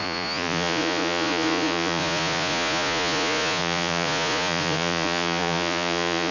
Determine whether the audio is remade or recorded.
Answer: remade